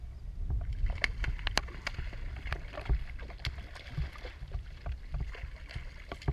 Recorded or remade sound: recorded